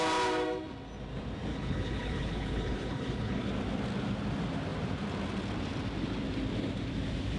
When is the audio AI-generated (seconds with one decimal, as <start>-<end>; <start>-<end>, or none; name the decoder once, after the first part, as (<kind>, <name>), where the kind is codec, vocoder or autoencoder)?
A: 1.5-3.5 (codec, HILCodec)